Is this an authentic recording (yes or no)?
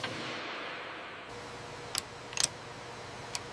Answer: yes